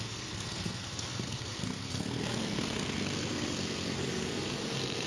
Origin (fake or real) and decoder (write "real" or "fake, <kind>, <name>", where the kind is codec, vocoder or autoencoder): fake, codec, SNAC